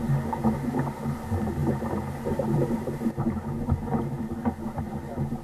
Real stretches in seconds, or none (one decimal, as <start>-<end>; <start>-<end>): 0.0-1.6; 4.0-5.4